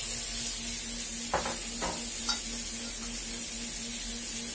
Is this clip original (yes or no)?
yes